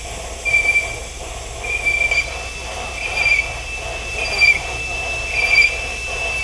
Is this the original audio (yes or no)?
yes